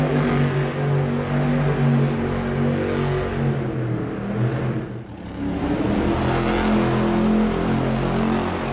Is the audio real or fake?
real